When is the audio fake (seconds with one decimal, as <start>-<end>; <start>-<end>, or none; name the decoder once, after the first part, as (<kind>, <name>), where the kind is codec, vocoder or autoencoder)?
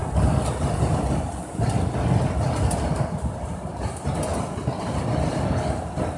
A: none